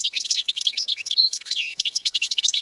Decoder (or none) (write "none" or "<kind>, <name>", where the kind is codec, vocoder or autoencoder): codec, SNAC